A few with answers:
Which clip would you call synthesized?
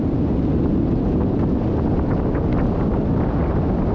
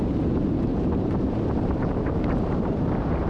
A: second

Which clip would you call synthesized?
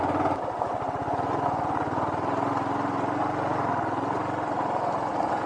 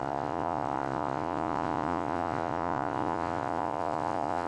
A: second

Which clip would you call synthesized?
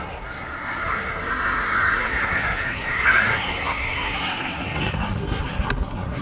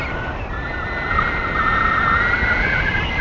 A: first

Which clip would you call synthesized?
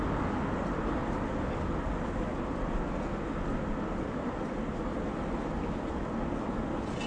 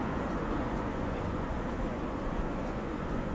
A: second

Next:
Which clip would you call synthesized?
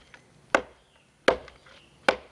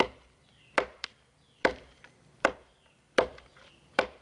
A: second